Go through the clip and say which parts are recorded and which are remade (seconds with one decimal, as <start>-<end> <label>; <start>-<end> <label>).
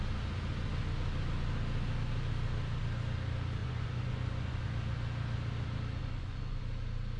0.0-3.6 recorded; 3.6-4.6 remade; 4.6-6.0 recorded; 6.0-6.6 remade; 6.6-7.2 recorded